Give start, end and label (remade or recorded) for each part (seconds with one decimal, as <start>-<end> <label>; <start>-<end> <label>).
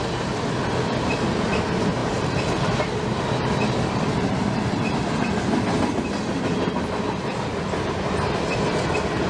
0.0-2.0 recorded; 2.0-4.9 remade; 4.9-9.3 recorded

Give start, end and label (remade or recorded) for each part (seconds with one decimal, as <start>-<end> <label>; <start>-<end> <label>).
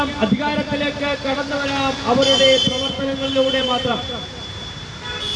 0.0-3.3 recorded; 3.3-4.1 remade; 4.1-5.4 recorded